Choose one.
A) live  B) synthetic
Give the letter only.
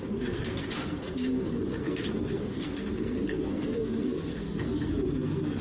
B